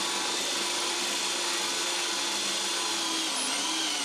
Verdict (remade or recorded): recorded